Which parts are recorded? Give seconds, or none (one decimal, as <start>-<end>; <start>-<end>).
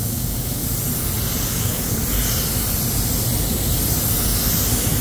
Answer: 0.6-1.5; 2.0-5.0